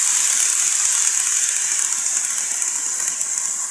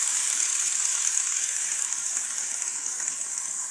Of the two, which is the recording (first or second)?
first